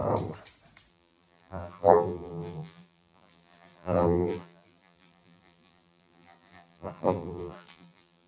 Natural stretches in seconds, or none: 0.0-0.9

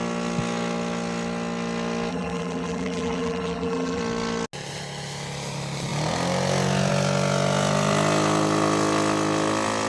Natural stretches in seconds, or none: 0.0-2.1; 4.0-9.9

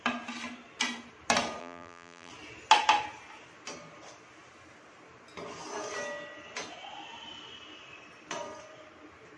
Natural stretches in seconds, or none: 0.0-1.6; 2.3-9.4